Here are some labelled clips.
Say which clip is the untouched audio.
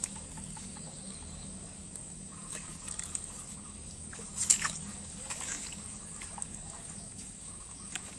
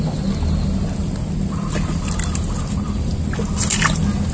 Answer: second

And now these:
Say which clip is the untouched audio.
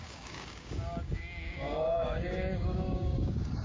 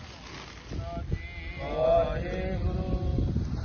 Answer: second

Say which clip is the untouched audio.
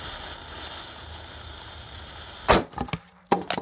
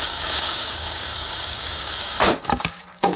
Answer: first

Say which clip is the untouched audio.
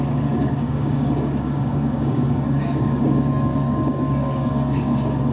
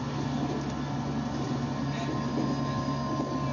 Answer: second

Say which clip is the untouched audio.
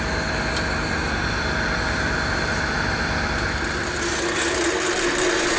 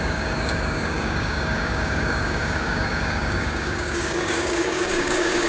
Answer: first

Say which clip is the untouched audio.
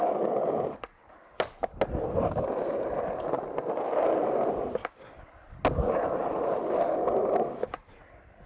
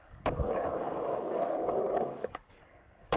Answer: first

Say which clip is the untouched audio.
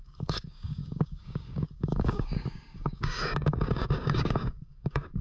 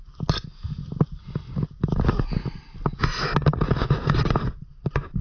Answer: second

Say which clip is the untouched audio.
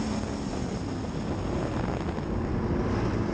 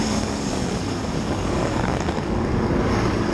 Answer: first